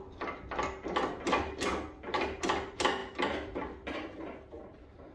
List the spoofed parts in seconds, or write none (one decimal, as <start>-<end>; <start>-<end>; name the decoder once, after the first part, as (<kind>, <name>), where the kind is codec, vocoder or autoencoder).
none

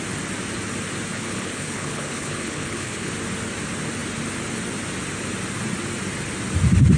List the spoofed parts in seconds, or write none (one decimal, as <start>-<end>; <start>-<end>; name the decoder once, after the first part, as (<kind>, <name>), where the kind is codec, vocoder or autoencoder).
1.1-3.1 (codec, HILCodec)

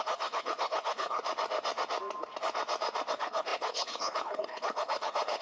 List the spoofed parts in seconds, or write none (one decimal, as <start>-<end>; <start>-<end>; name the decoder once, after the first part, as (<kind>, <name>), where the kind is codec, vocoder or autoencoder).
0.0-1.2 (codec, HILCodec); 3.1-5.4

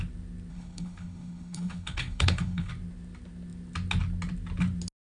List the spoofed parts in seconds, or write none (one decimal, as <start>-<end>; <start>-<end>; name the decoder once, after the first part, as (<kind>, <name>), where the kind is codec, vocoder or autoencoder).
0.5-2.7 (codec, HILCodec)

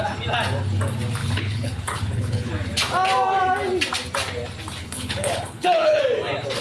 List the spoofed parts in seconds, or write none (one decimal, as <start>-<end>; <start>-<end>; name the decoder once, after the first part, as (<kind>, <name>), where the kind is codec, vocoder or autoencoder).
1.2-2.5 (codec, HILCodec); 4.8-6.0

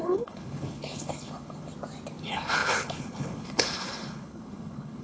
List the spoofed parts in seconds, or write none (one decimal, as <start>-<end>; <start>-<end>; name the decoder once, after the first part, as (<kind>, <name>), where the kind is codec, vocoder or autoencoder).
0.0-1.7 (codec, HILCodec); 2.2-5.0

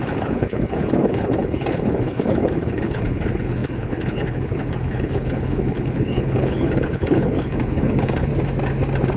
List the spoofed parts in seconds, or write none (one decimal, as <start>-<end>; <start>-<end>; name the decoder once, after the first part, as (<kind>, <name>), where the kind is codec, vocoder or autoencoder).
0.0-8.3 (codec, HILCodec)